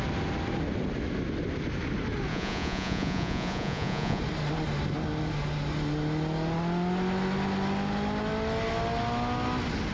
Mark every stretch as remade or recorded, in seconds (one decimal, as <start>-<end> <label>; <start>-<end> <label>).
0.0-2.3 recorded; 2.3-4.2 remade; 4.2-9.9 recorded